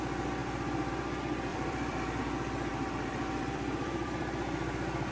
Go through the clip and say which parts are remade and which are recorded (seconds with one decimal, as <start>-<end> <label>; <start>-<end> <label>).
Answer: 0.0-0.4 recorded; 0.4-0.9 remade; 0.9-1.5 recorded; 1.5-2.2 remade; 2.2-2.7 recorded; 2.7-5.1 remade